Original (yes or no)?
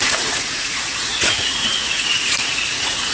no